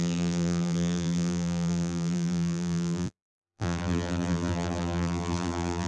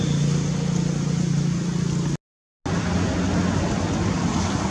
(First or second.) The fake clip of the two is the first